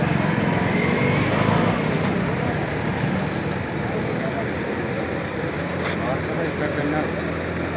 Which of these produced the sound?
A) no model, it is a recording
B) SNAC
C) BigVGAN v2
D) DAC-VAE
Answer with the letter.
A